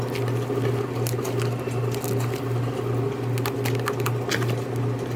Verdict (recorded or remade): recorded